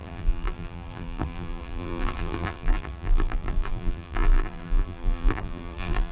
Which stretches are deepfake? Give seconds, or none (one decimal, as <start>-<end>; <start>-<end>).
0.0-6.1